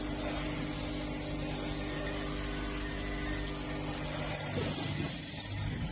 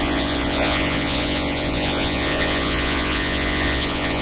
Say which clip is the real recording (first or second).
first